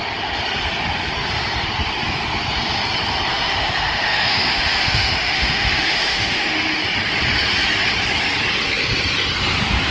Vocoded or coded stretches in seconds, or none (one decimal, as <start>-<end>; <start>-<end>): 3.3-6.8

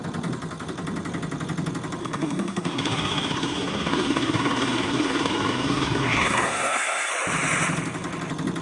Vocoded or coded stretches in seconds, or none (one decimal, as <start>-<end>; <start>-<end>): 2.0-7.1

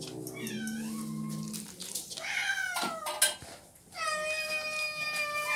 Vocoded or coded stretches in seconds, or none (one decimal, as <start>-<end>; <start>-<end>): none